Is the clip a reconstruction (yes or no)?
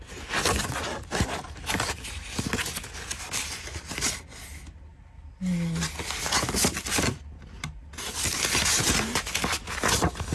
no